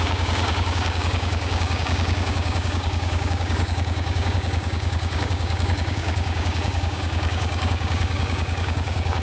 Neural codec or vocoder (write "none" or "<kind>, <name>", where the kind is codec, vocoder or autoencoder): codec, DAC